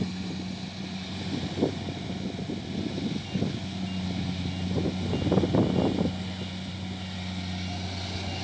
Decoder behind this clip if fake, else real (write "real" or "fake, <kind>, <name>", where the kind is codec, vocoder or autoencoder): real